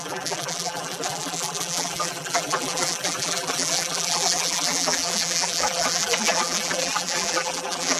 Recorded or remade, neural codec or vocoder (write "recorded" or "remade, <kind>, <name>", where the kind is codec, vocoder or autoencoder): remade, vocoder, BigVGAN v2